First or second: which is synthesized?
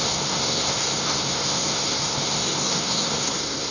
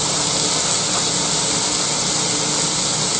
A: first